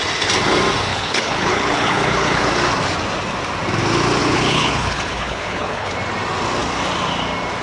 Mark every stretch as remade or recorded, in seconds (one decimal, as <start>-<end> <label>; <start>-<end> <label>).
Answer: 0.0-0.9 recorded; 0.9-2.5 remade; 2.5-4.2 recorded; 4.2-5.9 remade; 5.9-7.6 recorded